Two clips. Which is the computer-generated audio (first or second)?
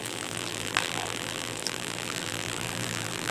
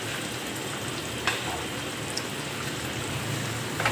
first